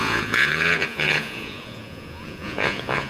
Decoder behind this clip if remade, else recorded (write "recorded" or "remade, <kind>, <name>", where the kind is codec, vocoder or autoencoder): remade, vocoder, Vocos